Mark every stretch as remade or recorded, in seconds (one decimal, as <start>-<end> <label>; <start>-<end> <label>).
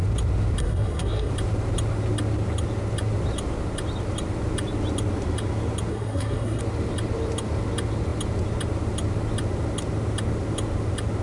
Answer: 0.0-0.6 recorded; 0.6-1.3 remade; 1.3-5.9 recorded; 5.9-6.6 remade; 6.6-11.2 recorded